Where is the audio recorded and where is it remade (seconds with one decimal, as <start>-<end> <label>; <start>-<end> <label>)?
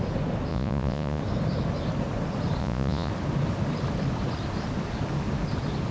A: 0.0-0.5 recorded; 0.5-1.2 remade; 1.2-2.6 recorded; 2.6-3.1 remade; 3.1-5.9 recorded